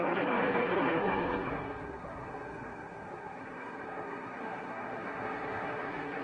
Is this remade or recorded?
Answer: remade